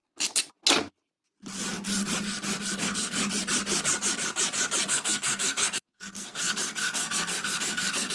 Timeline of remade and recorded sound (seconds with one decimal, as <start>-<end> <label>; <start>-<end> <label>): 0.0-2.8 recorded; 2.8-3.2 remade; 3.2-4.9 recorded; 4.9-8.1 remade